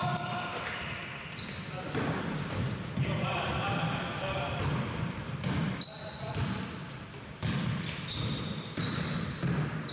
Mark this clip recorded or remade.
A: remade